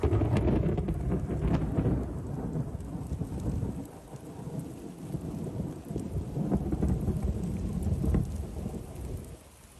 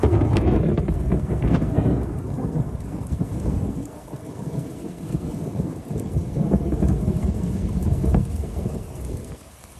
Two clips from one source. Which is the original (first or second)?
first